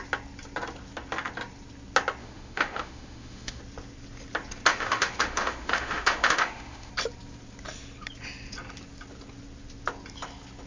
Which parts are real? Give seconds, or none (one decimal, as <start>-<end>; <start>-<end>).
0.0-2.2; 3.6-4.7; 6.9-10.7